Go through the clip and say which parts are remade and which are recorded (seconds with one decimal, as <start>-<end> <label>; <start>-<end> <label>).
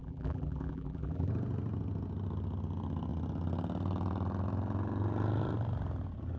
0.0-1.3 remade; 1.3-6.4 recorded